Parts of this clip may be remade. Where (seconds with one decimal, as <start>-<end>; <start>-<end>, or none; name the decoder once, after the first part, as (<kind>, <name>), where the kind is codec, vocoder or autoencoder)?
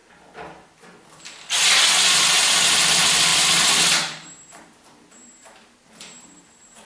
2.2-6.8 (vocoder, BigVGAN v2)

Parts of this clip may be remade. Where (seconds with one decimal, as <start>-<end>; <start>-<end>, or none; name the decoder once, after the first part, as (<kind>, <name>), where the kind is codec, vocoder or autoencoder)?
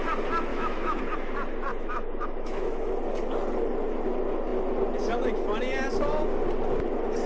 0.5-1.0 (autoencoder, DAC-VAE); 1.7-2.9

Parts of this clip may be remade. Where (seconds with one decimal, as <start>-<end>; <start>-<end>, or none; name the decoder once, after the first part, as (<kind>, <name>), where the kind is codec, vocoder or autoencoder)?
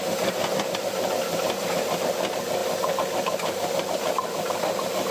0.5-1.6 (vocoder, BigVGAN v2); 2.6-5.1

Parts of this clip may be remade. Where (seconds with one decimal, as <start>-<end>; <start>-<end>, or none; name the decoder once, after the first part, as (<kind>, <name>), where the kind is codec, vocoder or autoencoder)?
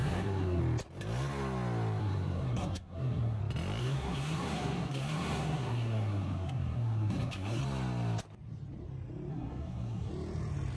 0.0-0.6 (codec, SNAC); 2.0-3.4; 3.8-7.6; 9.3-10.1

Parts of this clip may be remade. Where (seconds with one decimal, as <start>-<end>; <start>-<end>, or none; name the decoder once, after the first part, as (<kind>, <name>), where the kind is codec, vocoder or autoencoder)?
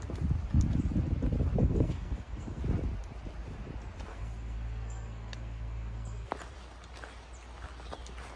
1.6-2.6 (codec, SNAC); 4.1-6.3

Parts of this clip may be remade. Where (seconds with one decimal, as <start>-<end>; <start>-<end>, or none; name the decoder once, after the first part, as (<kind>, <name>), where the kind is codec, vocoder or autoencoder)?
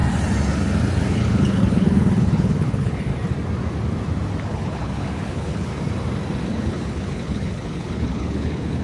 1.1-3.1 (codec, HILCodec); 4.4-5.7; 6.5-8.8